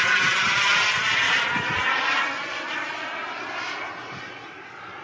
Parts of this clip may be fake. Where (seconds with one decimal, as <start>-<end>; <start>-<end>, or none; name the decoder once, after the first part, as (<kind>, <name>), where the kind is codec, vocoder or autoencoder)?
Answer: none